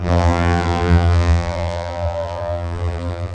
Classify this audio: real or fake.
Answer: fake